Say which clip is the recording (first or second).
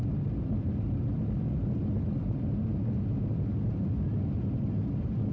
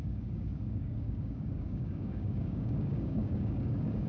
first